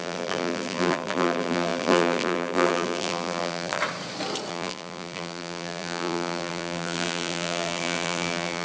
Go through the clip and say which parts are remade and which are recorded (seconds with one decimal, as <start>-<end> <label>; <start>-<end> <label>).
0.0-3.8 remade; 3.8-4.5 recorded; 4.5-8.6 remade